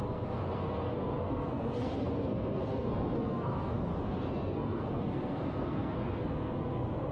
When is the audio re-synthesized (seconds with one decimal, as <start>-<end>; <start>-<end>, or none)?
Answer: 0.0-7.1